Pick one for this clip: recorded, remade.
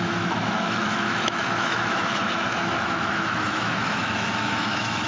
remade